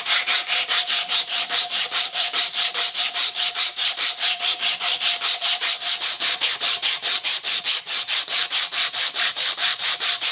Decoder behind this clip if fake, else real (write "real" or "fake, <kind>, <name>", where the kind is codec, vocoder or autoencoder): fake, vocoder, BigVGAN v2